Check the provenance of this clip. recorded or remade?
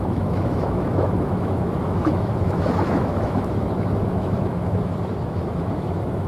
remade